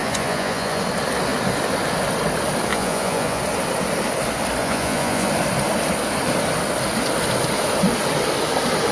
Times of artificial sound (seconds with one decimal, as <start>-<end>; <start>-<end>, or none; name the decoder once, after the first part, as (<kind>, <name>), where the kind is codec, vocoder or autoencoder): 0.0-0.8 (vocoder, Vocos); 2.7-3.4; 4.6-5.3